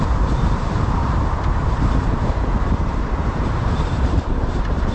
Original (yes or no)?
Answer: no